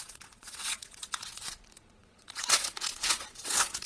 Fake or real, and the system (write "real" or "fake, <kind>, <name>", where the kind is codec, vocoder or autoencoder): fake, vocoder, Vocos